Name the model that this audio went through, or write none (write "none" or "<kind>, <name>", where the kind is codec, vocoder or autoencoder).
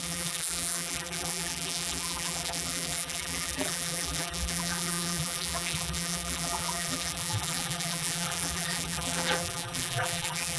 vocoder, BigVGAN v2